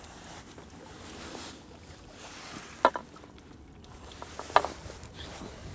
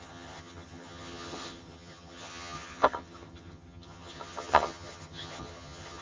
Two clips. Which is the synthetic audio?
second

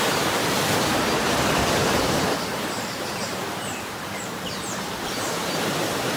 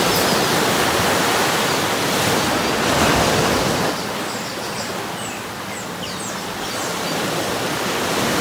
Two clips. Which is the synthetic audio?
first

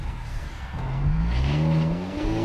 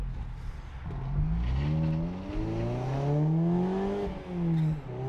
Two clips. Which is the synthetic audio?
first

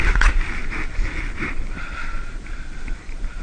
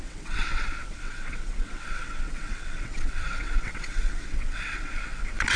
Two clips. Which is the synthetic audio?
second